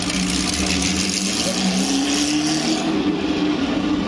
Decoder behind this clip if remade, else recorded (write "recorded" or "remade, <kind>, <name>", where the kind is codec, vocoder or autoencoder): recorded